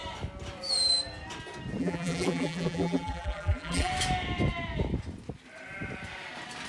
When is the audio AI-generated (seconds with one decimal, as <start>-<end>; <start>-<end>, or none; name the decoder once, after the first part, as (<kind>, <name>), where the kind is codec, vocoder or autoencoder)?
1.8-3.9 (vocoder, BigVGAN v2)